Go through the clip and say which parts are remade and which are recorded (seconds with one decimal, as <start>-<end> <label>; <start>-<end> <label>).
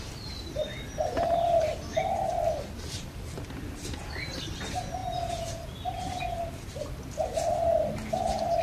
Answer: 0.0-8.6 recorded